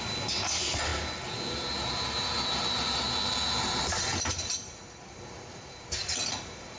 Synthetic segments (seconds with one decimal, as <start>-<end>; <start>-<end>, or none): 4.1-6.8